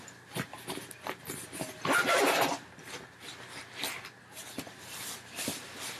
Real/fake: real